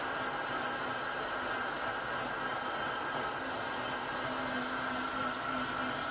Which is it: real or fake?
real